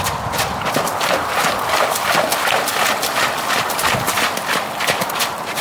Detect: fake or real real